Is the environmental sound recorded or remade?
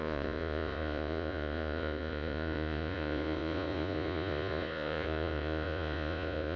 remade